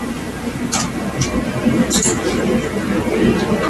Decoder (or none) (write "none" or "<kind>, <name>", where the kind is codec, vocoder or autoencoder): none